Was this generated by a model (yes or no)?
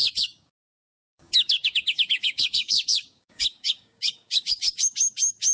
yes